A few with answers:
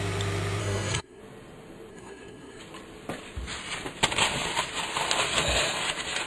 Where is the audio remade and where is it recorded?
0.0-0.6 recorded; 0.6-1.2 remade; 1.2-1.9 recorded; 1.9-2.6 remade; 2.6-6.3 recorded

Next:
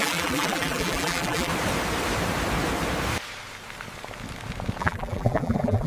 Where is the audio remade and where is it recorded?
0.0-1.5 remade; 1.5-4.8 recorded; 4.8-5.9 remade

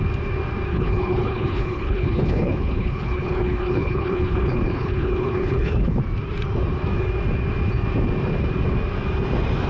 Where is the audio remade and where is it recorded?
0.0-0.7 recorded; 0.7-6.0 remade; 6.0-9.7 recorded

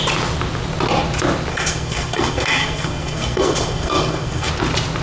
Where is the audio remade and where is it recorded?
0.0-1.5 recorded; 1.5-4.5 remade; 4.5-5.0 recorded

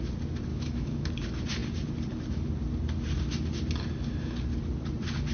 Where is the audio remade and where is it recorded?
0.0-0.5 recorded; 0.5-1.1 remade; 1.1-5.3 recorded

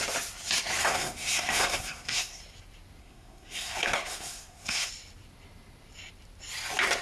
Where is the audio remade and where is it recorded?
0.0-0.8 recorded; 0.8-2.4 remade; 2.4-3.0 recorded; 3.0-4.9 remade; 4.9-7.0 recorded

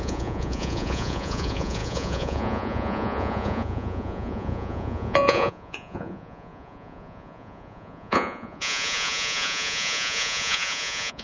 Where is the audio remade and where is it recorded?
0.0-11.2 remade

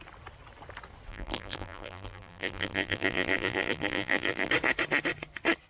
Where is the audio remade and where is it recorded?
0.0-1.1 recorded; 1.1-4.5 remade; 4.5-5.7 recorded